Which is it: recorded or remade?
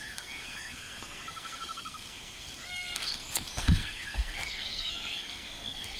remade